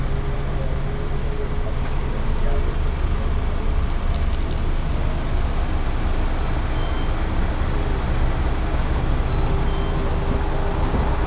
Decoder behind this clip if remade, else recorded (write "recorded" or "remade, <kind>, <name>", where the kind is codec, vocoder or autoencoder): recorded